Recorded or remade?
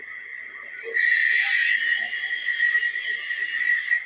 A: recorded